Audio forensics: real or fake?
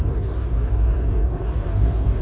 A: fake